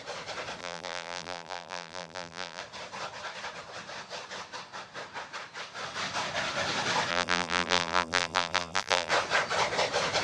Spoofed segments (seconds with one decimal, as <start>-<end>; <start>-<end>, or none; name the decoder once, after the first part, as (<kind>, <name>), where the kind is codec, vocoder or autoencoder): 0.6-2.6 (vocoder, BigVGAN v2); 7.1-9.1